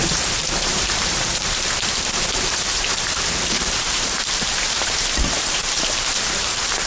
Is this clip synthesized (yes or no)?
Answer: yes